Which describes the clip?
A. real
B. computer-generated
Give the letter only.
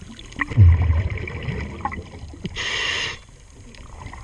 A